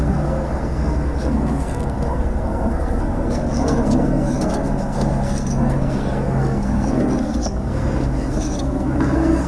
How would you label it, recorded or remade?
remade